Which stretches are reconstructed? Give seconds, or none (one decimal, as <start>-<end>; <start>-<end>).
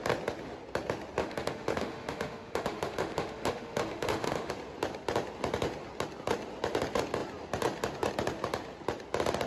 1.2-4.5